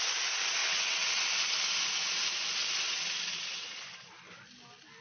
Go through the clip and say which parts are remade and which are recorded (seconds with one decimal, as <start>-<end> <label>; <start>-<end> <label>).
0.0-0.6 recorded; 0.6-1.2 remade; 1.2-3.3 recorded; 3.3-3.8 remade; 3.8-5.0 recorded